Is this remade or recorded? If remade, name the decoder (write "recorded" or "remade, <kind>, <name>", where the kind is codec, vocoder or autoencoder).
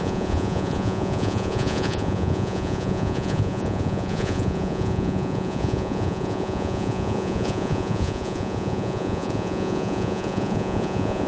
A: remade, vocoder, Vocos